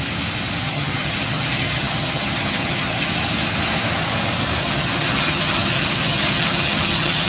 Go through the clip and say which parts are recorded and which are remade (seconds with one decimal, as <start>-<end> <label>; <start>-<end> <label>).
0.0-0.6 recorded; 0.6-3.1 remade; 3.1-4.6 recorded; 4.6-7.3 remade